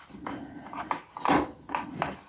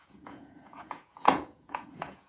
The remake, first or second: second